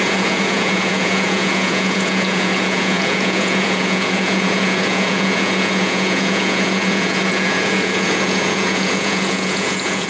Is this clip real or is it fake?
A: fake